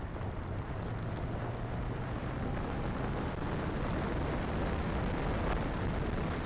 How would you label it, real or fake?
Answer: real